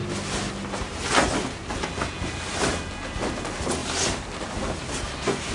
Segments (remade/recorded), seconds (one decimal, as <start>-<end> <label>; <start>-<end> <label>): 0.0-3.8 recorded; 3.8-5.5 remade